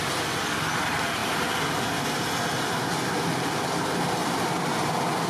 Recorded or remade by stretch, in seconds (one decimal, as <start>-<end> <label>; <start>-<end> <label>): 0.0-5.3 recorded

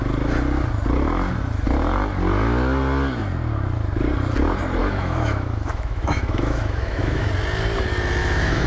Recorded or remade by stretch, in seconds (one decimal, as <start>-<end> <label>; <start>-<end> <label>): 0.0-4.8 recorded; 4.8-7.3 remade; 7.3-8.2 recorded; 8.2-8.7 remade

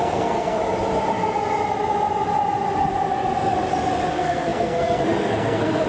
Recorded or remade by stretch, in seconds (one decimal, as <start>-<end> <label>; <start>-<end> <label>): 0.0-0.6 remade; 0.6-4.1 recorded; 4.1-5.9 remade